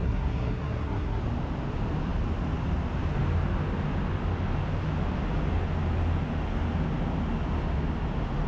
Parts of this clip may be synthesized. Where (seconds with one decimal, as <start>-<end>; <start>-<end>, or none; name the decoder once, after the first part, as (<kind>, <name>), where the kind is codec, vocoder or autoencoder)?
0.0-1.2 (codec, SNAC)